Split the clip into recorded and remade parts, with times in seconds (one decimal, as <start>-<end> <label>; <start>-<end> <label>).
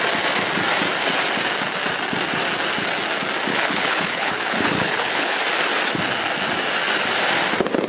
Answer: 0.0-3.5 recorded; 3.5-5.4 remade; 5.4-7.9 recorded